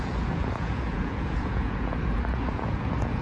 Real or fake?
fake